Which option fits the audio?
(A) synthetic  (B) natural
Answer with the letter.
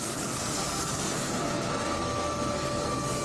A